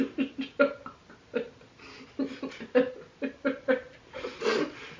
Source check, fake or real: real